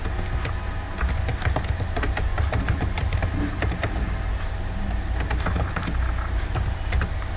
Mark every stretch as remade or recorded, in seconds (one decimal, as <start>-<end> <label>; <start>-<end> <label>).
0.0-2.3 recorded; 2.3-3.5 remade; 3.5-7.4 recorded